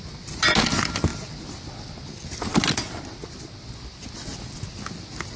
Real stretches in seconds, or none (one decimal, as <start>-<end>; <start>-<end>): 0.0-5.4